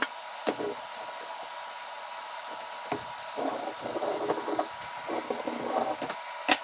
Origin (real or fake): real